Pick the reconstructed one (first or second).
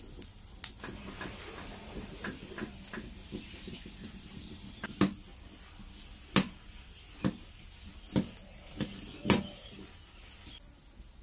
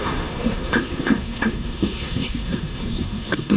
second